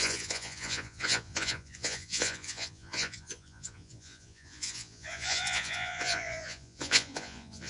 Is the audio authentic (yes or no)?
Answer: no